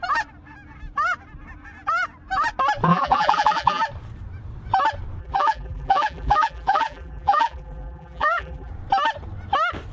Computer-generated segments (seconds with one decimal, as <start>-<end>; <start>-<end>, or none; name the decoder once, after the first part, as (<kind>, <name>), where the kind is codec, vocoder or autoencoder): 2.9-3.8 (vocoder, BigVGAN v2); 5.2-8.7